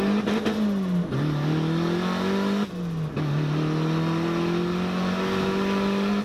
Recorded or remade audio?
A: recorded